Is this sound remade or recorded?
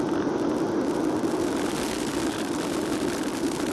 recorded